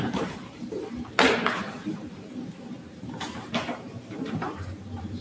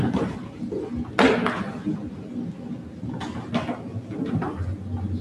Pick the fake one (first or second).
first